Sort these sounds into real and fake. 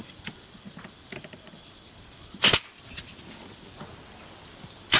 real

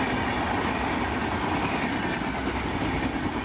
real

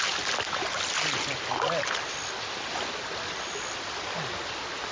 real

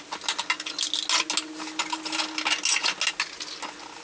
real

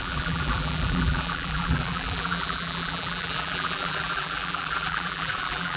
fake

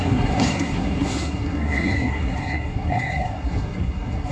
fake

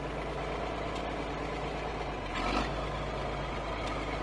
real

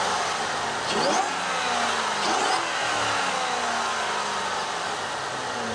real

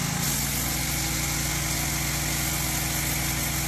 real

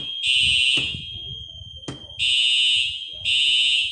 real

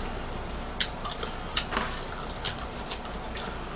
real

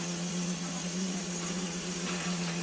fake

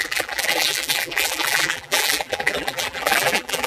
fake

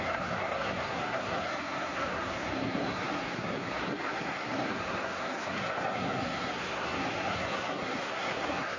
fake